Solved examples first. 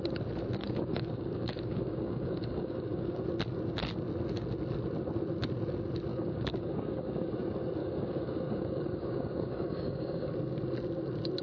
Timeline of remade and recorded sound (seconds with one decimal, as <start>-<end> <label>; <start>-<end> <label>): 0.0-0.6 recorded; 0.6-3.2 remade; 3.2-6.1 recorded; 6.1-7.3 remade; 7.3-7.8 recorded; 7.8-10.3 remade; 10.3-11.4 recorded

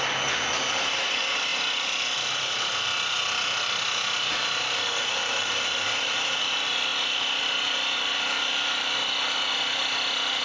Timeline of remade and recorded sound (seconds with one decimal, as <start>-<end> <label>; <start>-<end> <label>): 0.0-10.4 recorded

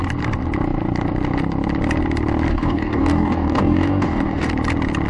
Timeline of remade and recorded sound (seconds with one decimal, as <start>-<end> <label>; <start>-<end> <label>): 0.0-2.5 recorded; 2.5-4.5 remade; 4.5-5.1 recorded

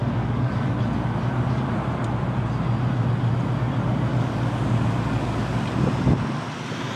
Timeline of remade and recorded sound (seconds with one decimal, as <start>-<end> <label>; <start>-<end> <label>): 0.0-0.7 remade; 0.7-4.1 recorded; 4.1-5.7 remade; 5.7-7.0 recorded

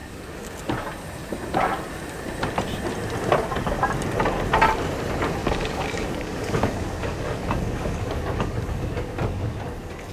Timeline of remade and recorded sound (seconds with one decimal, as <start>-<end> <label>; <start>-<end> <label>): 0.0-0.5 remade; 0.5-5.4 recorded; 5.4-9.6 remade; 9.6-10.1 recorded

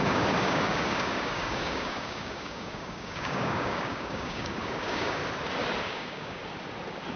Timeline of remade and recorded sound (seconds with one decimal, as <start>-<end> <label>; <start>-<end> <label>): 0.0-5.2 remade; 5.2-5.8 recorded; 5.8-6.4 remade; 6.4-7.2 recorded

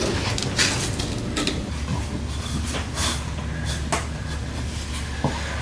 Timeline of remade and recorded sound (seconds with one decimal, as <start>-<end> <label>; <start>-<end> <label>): 0.0-5.6 recorded